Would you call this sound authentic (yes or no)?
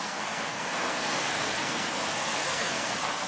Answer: no